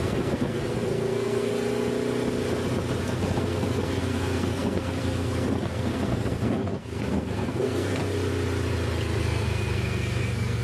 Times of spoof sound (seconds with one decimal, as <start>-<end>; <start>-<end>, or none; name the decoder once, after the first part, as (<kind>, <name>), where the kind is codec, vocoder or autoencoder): 0.0-1.5 (codec, SNAC); 3.0-8.0; 9.2-10.6